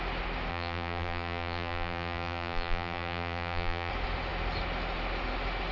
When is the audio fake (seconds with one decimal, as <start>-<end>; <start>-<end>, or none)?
0.5-3.9